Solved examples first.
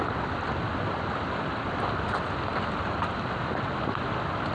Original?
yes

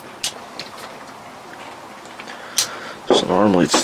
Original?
yes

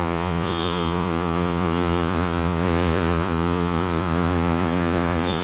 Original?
no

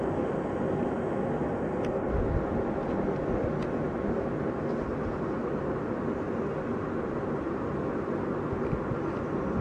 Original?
yes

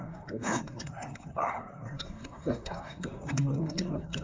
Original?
no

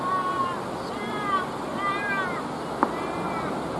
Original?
yes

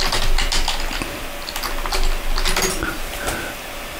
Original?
yes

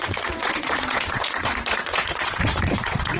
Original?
no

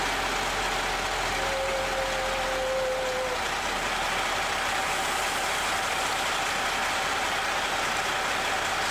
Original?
yes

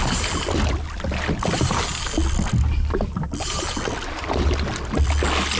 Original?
yes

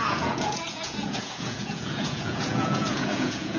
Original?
no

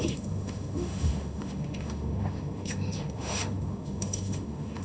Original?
no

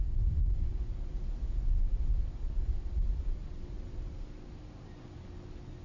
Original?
yes